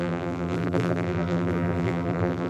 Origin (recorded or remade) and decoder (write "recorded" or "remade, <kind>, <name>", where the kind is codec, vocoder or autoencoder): remade, vocoder, BigVGAN v2